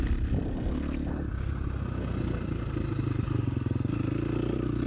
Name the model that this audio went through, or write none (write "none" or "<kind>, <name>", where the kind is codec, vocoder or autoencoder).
none